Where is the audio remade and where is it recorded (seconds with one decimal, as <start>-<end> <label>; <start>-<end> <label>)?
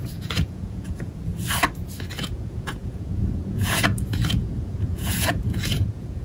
0.0-1.3 remade; 1.3-2.2 recorded; 2.2-6.2 remade